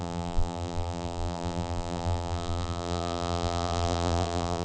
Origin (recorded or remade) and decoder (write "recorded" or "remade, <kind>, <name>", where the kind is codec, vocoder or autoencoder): remade, vocoder, BigVGAN v2